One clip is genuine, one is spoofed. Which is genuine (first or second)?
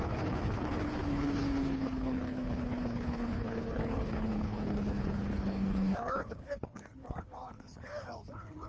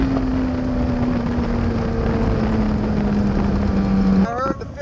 second